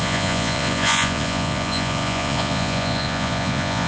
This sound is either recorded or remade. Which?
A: remade